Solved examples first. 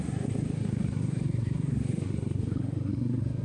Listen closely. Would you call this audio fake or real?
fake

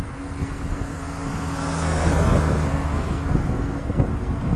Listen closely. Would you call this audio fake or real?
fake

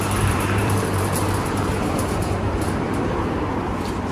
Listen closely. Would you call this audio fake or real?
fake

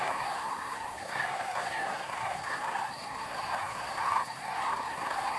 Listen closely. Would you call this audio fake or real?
fake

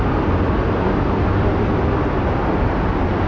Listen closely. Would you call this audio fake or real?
real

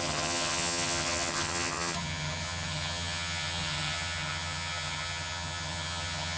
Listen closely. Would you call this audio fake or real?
fake